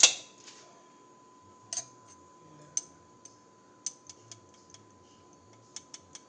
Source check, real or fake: real